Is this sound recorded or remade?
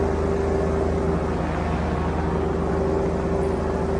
recorded